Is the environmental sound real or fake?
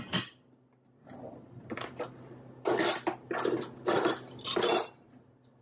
real